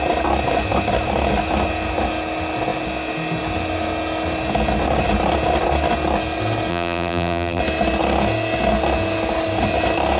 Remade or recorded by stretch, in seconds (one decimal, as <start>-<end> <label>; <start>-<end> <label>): 0.0-6.7 recorded; 6.7-7.6 remade; 7.6-10.2 recorded